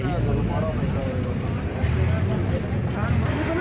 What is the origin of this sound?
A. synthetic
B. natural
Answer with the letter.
B